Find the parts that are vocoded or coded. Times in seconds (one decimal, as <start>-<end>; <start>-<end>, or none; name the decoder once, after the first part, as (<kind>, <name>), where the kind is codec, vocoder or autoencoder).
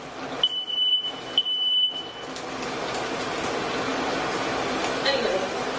none